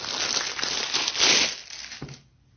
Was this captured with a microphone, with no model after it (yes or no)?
yes